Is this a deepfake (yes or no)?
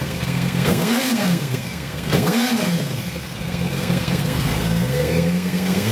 yes